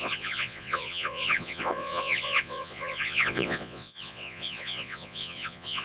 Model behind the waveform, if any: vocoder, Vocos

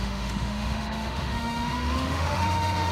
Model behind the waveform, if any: autoencoder, DAC-VAE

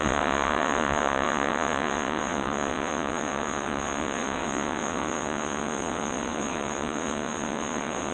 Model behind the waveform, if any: vocoder, WaveNeXt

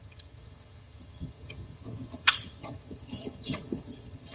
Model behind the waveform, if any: vocoder, HiFi-GAN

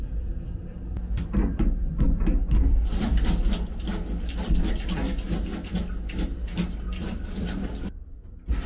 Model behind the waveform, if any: none